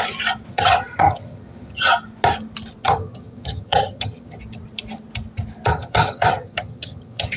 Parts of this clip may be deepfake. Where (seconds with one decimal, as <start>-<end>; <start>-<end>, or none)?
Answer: 0.5-1.9; 2.8-4.4; 5.7-7.4